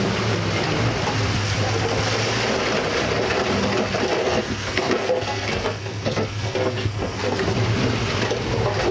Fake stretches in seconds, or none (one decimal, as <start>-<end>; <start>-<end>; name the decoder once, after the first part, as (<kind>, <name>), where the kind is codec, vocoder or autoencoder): 4.2-7.4 (codec, SNAC)